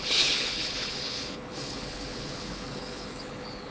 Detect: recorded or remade remade